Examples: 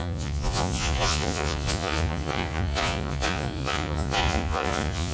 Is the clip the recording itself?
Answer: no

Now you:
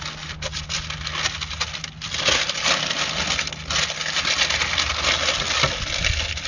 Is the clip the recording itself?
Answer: yes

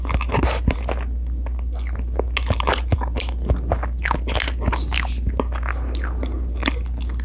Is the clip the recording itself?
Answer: yes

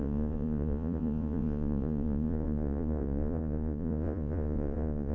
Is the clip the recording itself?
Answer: no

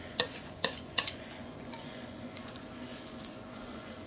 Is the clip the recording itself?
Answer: no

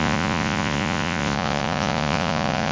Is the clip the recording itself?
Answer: no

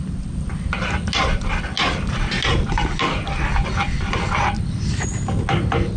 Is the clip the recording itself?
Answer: yes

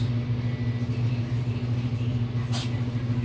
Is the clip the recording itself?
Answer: yes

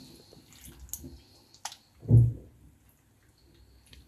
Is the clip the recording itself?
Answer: yes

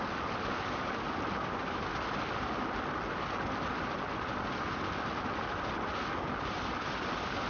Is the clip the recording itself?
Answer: yes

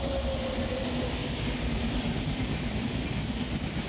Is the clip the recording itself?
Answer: yes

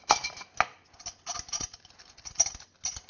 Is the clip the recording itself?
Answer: yes